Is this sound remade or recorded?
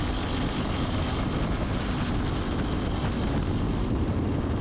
recorded